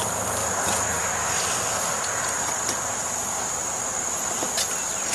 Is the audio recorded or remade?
recorded